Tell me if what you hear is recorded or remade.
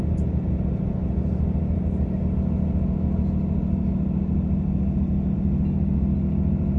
recorded